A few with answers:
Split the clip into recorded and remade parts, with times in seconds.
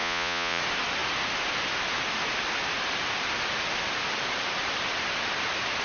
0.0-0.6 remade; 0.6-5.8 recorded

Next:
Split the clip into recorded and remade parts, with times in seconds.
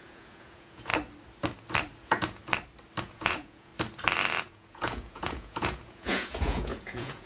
0.0-0.9 remade; 0.9-2.0 recorded; 2.0-2.4 remade; 2.4-3.0 recorded; 3.0-3.7 remade; 3.7-4.4 recorded; 4.4-7.3 remade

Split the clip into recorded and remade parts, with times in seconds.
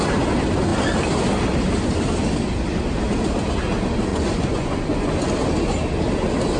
0.0-4.1 recorded; 4.1-5.1 remade; 5.1-6.6 recorded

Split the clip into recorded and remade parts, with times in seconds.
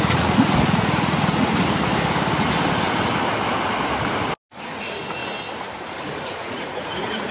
0.0-1.5 remade; 1.5-4.7 recorded; 4.7-5.2 remade; 5.2-6.0 recorded; 6.0-7.3 remade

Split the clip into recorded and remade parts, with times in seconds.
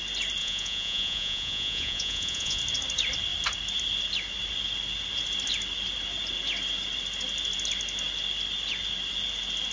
0.0-0.4 recorded; 0.4-2.6 remade; 2.6-9.7 recorded